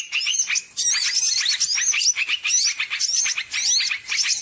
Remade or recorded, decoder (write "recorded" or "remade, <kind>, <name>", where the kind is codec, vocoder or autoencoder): recorded